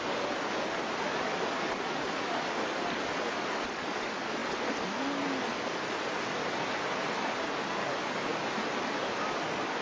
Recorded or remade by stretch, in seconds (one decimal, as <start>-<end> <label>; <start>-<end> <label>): 0.0-9.8 recorded